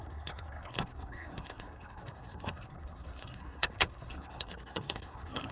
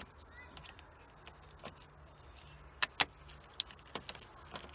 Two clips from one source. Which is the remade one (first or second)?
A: first